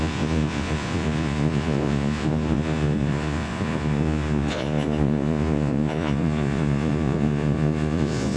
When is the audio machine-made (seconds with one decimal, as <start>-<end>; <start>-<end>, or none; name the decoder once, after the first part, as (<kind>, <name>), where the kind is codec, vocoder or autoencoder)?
0.0-8.4 (vocoder, Vocos)